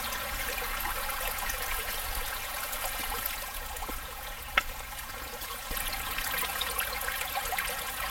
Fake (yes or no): yes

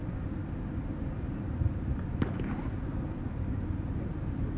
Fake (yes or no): no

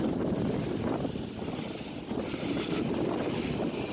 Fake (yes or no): no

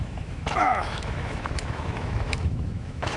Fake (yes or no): yes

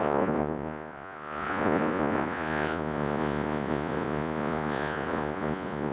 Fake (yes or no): yes